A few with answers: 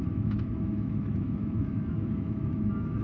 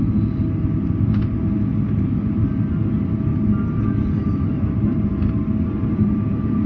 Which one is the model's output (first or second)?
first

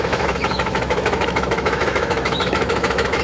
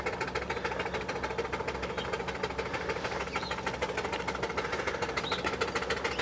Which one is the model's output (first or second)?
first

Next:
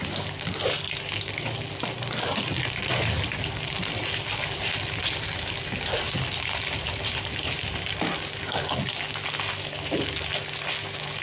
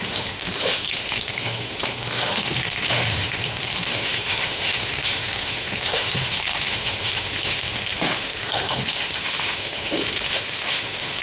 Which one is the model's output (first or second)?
second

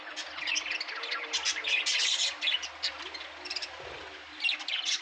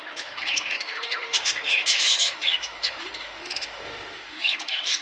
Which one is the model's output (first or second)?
second